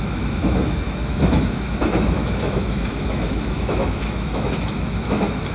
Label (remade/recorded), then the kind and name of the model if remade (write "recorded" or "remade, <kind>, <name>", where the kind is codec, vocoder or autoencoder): remade, autoencoder, DAC-VAE